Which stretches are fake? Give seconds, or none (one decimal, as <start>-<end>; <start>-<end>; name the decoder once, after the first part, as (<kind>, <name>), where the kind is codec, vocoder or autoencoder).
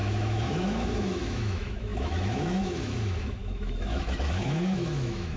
0.0-5.4 (autoencoder, DAC-VAE)